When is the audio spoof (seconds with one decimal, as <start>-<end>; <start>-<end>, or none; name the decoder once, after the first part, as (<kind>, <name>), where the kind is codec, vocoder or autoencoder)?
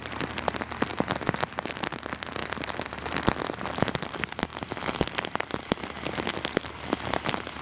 2.4-3.3 (vocoder, BigVGAN v2); 4.5-5.8